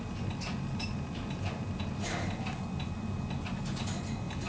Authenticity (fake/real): real